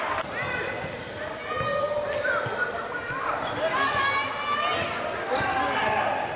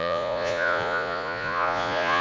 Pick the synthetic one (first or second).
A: second